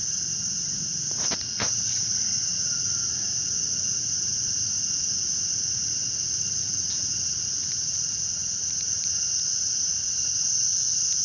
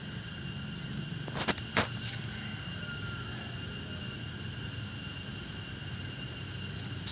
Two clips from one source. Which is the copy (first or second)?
first